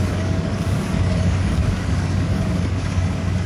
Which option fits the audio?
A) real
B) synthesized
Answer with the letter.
B